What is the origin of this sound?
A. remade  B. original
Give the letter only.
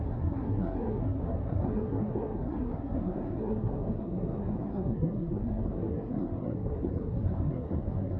A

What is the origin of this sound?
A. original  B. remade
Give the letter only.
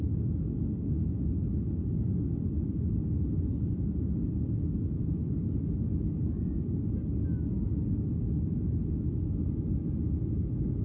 A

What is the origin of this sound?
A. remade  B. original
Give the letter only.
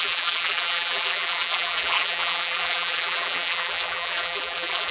A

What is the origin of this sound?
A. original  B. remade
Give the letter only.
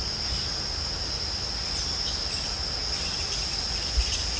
A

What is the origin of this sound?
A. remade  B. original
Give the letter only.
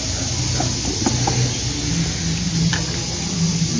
B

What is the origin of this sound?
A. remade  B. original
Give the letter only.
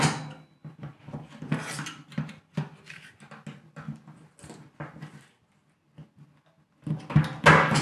B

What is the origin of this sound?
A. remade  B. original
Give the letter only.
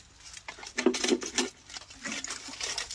B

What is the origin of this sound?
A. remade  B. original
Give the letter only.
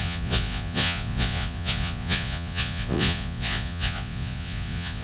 A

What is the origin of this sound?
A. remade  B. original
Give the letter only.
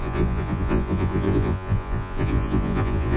A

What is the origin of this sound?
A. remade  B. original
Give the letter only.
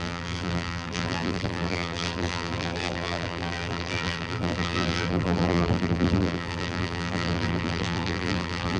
A